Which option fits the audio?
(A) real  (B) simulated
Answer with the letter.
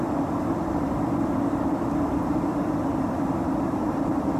B